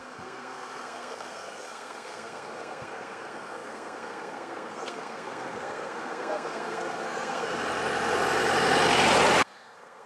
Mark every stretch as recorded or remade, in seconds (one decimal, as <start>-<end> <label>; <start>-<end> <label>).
0.0-7.5 remade; 7.5-9.4 recorded; 9.4-10.1 remade